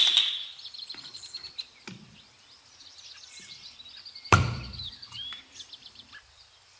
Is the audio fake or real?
fake